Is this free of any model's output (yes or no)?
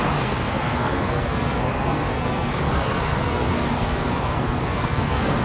no